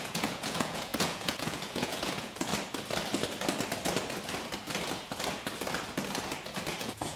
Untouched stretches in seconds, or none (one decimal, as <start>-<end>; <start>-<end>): 2.5-6.8